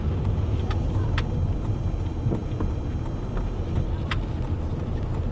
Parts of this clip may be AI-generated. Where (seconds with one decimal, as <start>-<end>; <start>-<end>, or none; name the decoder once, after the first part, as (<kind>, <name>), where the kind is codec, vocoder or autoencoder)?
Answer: none